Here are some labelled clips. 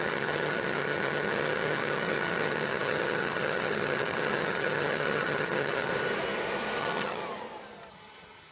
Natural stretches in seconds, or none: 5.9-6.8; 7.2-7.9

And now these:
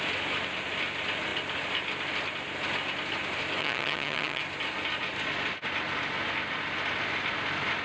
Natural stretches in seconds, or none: 0.0-3.6; 4.4-7.8

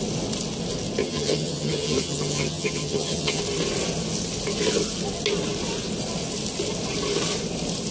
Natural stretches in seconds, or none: 0.0-1.0; 3.4-7.9

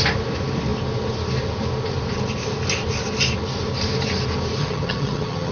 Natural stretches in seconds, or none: 0.0-4.6